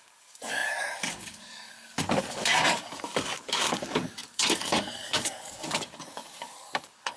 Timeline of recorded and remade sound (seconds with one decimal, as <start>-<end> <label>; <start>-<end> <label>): 0.0-7.2 remade